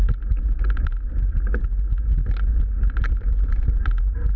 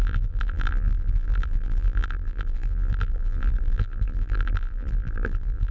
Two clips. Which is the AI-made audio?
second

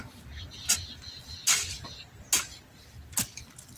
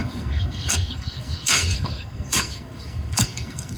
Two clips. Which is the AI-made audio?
second